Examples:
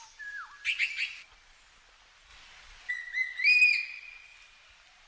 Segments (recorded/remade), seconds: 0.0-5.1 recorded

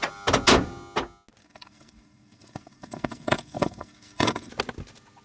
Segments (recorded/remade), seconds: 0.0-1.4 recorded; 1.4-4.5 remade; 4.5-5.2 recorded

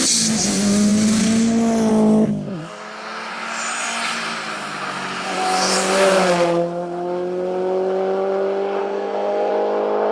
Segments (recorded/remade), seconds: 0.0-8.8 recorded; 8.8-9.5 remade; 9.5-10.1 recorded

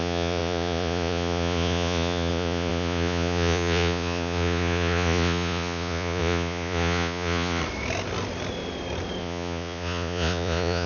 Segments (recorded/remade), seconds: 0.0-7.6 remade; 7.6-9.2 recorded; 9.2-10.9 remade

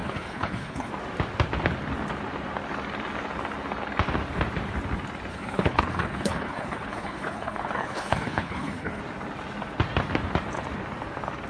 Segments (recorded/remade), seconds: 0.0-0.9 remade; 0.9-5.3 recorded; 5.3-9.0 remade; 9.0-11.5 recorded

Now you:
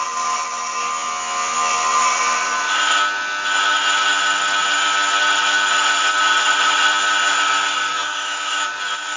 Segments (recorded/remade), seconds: 0.0-7.9 recorded; 7.9-8.7 remade; 8.7-9.2 recorded

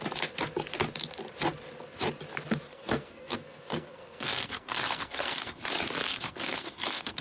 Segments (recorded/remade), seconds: 0.0-2.7 recorded; 2.7-5.6 remade; 5.6-6.1 recorded; 6.1-7.2 remade

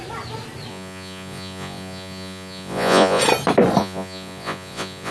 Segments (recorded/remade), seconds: 0.0-0.7 recorded; 0.7-3.2 remade; 3.2-3.8 recorded; 3.8-5.1 remade